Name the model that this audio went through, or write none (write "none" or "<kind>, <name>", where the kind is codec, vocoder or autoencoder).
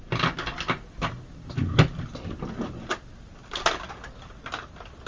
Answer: none